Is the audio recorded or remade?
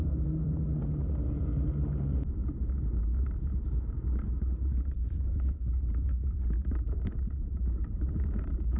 remade